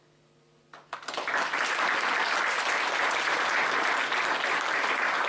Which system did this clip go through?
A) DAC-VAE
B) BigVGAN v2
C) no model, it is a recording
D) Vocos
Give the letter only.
C